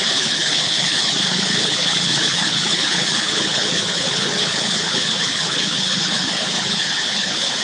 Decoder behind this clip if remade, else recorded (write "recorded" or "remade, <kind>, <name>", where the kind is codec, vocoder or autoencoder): remade, codec, HILCodec